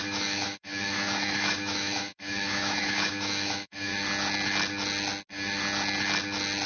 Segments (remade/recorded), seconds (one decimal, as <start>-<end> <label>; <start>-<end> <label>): 0.0-3.9 remade; 3.9-6.7 recorded